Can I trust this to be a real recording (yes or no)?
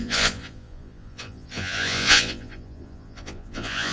no